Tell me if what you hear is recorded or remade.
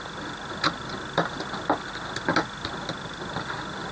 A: recorded